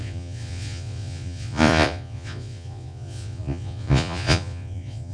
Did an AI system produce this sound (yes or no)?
yes